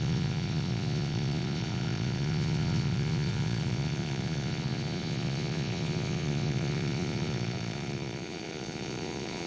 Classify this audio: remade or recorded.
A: remade